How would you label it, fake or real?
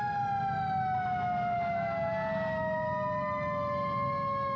real